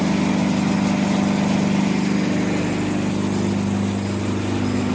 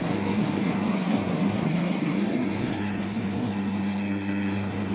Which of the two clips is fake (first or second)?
second